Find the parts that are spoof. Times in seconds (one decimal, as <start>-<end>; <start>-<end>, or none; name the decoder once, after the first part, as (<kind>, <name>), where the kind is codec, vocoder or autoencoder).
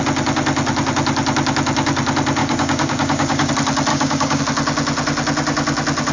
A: 2.4-3.5 (codec, DAC); 3.9-4.4